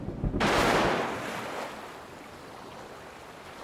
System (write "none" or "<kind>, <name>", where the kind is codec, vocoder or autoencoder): none